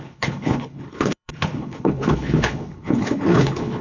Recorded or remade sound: remade